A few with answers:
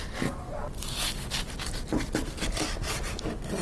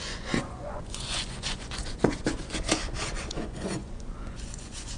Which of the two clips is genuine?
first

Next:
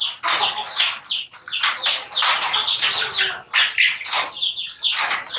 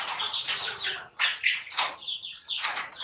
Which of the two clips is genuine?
first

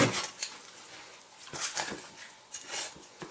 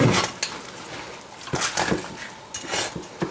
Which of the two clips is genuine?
second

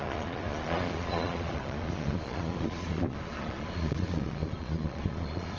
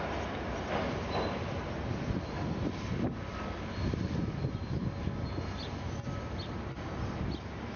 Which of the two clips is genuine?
second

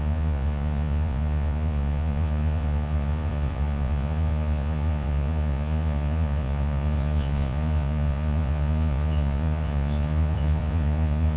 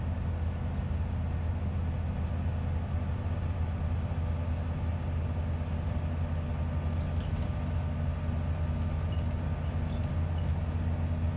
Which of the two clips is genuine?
second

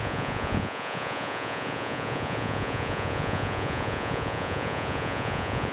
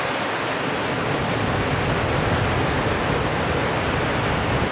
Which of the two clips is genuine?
second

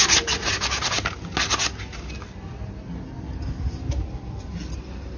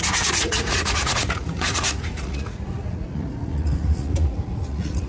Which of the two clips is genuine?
first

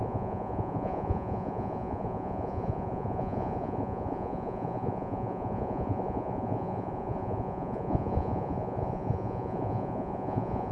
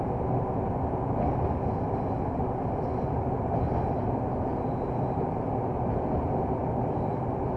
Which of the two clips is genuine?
second